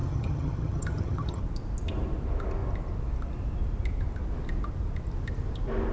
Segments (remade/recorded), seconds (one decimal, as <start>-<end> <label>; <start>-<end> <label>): 0.0-1.4 remade; 1.4-5.9 recorded